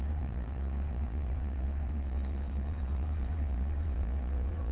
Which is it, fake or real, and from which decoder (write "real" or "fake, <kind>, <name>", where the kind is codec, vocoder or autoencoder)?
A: fake, vocoder, Vocos